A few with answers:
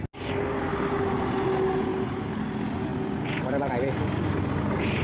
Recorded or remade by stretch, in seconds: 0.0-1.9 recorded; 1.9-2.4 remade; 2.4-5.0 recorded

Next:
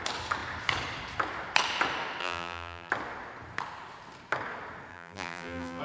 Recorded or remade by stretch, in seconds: 0.0-2.2 recorded; 2.2-2.9 remade; 2.9-4.9 recorded; 4.9-5.8 remade

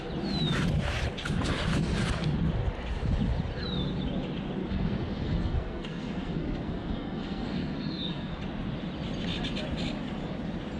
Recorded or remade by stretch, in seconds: 0.0-4.6 recorded; 4.6-8.4 remade; 8.4-10.8 recorded

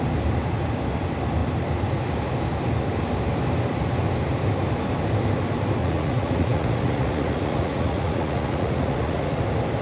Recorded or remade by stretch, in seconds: 0.0-5.8 recorded; 5.8-9.4 remade; 9.4-9.8 recorded

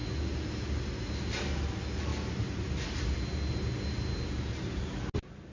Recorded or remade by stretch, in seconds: 0.0-5.5 recorded

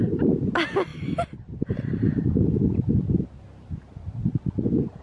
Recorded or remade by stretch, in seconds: 0.0-5.0 recorded